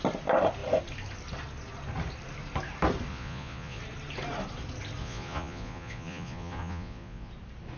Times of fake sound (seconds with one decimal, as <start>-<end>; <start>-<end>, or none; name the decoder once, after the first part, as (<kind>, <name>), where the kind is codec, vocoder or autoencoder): 3.1-3.8 (vocoder, Vocos); 5.0-7.3